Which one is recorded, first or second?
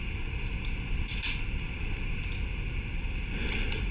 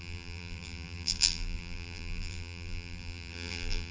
first